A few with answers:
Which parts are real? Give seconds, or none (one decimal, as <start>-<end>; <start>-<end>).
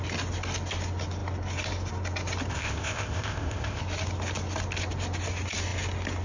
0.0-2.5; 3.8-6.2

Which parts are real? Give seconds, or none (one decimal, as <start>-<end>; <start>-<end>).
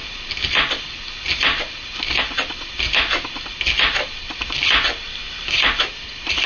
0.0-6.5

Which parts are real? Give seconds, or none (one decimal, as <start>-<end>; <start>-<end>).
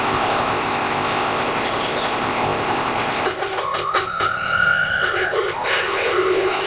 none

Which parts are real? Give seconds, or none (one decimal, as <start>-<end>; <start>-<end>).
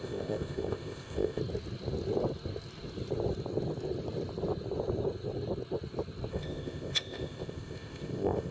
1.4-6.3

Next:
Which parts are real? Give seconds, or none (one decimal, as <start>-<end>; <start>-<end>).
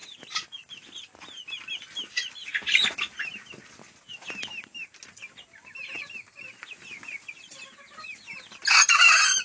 0.0-9.4